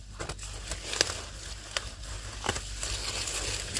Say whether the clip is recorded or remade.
recorded